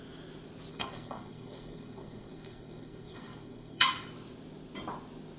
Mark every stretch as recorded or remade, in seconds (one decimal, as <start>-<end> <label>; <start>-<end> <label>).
0.0-0.7 recorded; 0.7-3.9 remade; 3.9-5.4 recorded